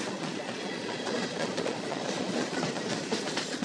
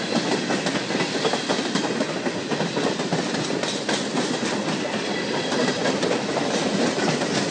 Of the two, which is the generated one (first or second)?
first